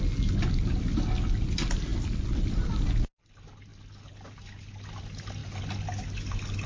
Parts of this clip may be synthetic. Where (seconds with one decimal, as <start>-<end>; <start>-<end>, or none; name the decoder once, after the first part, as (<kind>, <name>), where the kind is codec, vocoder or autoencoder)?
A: none

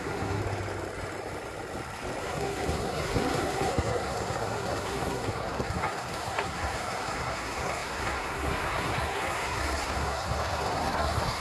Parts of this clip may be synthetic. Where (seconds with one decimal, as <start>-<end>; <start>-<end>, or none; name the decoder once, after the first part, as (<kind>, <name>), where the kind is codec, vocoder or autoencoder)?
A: 0.0-0.4 (codec, SNAC); 2.2-11.4

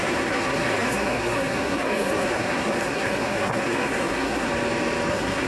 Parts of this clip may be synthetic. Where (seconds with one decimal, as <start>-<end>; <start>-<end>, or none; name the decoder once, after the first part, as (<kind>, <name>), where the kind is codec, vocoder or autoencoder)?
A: 0.0-4.5 (codec, SNAC); 5.1-5.5

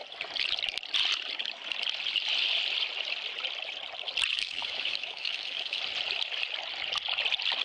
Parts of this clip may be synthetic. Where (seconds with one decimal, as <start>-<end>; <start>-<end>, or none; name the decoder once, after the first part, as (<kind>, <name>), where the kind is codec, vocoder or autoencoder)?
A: 4.3-5.8 (autoencoder, DAC-VAE)

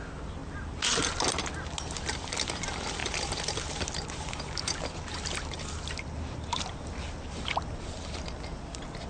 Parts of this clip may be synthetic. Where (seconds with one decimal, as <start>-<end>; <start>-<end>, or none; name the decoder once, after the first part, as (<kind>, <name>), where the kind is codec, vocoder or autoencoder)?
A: none

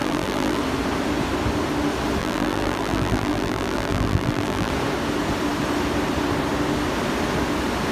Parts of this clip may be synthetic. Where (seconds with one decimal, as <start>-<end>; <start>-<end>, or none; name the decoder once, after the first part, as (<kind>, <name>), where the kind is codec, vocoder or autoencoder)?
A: 0.0-0.6 (vocoder, BigVGAN v2); 2.2-4.7

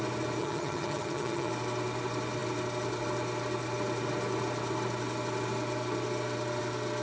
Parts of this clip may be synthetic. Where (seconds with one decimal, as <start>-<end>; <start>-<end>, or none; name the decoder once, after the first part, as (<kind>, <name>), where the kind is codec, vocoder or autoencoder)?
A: 0.4-1.5 (vocoder, HiFi-GAN)

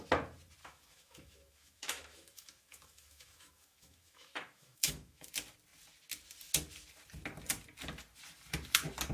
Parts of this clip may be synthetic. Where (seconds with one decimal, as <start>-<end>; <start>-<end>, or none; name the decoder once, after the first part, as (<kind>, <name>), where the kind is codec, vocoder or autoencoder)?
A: 0.6-5.3 (autoencoder, DAC-VAE)